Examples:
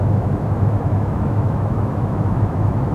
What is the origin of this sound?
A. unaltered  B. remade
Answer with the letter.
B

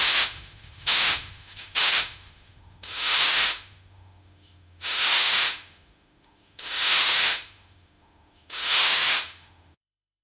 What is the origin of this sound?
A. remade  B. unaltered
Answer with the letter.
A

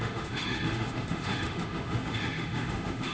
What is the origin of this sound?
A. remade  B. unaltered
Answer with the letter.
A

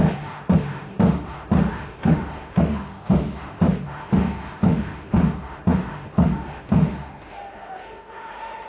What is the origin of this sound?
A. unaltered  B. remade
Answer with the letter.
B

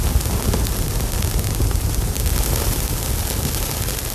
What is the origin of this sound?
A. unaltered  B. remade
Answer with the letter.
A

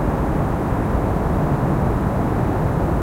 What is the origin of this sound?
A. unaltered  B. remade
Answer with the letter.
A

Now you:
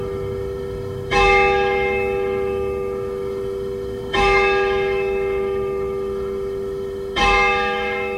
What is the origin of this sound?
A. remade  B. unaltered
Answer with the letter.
A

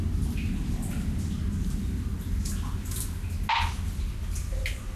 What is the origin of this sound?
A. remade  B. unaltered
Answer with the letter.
B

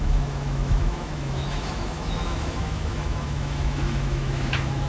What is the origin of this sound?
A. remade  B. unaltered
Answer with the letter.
A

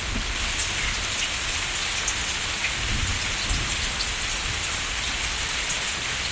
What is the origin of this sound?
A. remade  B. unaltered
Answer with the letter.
B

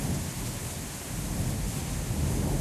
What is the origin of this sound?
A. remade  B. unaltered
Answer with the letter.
B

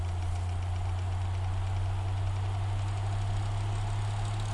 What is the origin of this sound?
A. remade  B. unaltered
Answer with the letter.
B